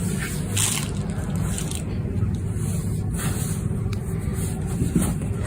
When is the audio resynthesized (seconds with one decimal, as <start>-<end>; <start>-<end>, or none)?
none